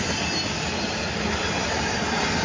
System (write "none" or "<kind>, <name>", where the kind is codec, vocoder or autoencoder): none